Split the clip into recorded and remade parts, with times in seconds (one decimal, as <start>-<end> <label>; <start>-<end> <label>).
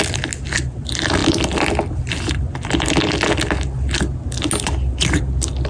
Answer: 0.0-5.7 recorded